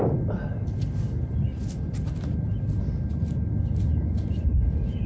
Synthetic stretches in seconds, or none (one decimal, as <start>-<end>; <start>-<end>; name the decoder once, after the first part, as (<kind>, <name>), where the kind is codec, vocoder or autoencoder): 4.0-5.1 (vocoder, Vocos)